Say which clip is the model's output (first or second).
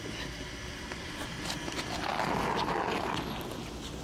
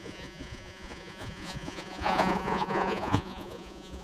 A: second